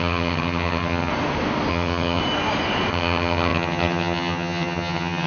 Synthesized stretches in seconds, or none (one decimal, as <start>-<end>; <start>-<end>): 0.0-1.1; 1.7-2.2; 2.9-5.3